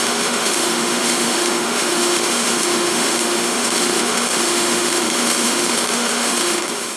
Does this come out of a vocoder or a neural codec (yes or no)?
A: yes